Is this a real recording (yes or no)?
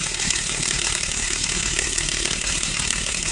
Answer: no